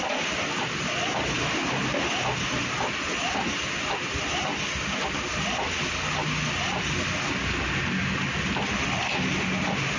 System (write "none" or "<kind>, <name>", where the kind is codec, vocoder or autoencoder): none